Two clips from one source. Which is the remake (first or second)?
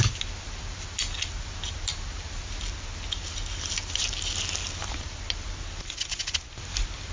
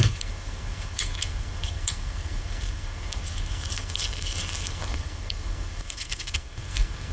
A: second